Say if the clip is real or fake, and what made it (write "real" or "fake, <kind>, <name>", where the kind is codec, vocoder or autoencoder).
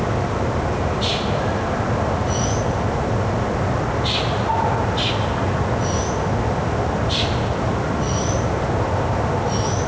real